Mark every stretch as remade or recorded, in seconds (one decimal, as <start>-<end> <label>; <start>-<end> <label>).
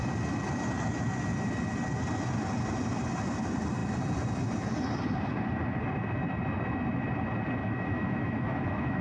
0.0-7.6 recorded; 7.6-9.0 remade